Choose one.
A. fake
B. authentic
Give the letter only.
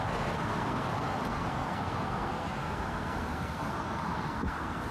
A